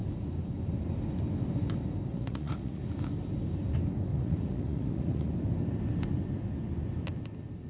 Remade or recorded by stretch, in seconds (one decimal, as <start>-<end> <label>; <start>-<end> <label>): 0.0-2.1 recorded; 2.1-2.8 remade; 2.8-4.1 recorded; 4.1-5.3 remade; 5.3-7.7 recorded